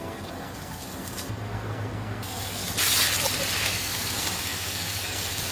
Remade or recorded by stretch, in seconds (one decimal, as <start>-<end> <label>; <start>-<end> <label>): 0.0-2.6 remade; 2.6-3.6 recorded; 3.6-5.5 remade